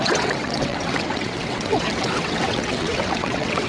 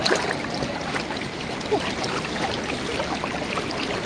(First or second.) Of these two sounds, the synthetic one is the first